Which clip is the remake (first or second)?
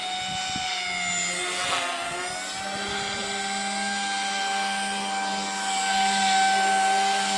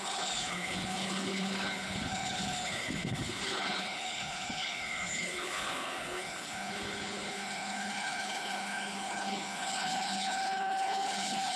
second